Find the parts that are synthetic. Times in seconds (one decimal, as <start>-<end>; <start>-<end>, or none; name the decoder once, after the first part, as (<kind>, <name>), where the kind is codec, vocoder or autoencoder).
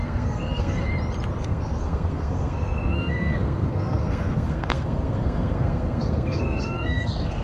0.0-0.9 (codec, SNAC); 1.4-7.4